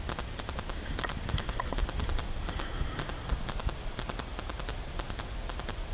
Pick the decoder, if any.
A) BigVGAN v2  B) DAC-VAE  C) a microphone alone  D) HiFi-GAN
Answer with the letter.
C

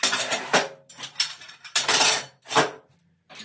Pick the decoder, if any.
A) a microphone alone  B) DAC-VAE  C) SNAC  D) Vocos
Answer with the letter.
A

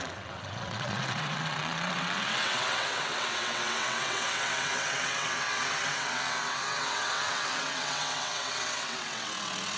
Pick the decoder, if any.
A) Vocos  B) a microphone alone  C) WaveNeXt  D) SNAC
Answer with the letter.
C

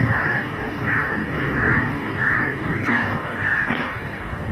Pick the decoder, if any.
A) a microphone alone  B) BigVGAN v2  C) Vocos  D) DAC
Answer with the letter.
D